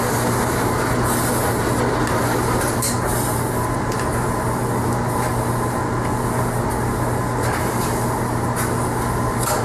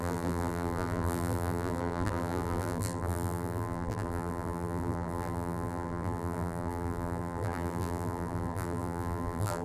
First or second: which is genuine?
first